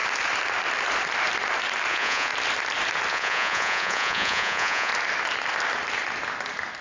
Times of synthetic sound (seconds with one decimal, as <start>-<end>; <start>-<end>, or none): 1.9-2.3; 3.1-4.9

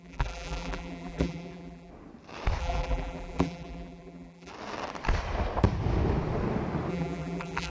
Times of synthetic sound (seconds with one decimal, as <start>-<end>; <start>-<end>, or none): 0.0-1.9; 2.6-4.5; 6.9-7.7

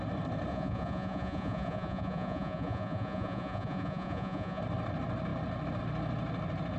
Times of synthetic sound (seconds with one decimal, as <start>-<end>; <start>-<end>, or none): 0.5-4.6

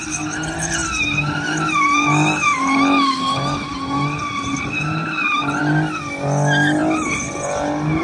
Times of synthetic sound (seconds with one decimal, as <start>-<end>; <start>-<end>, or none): none

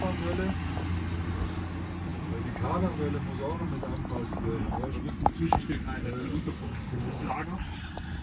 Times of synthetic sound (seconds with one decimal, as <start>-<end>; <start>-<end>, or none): 6.2-7.3

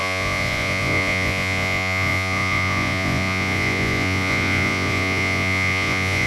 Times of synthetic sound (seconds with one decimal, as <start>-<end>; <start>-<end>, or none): 0.0-6.3

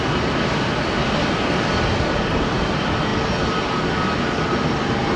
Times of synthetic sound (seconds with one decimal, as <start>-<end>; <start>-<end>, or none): none